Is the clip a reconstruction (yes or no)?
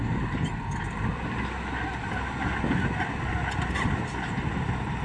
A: no